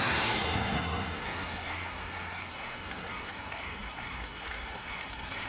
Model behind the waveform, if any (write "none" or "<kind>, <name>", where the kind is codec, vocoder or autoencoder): codec, SNAC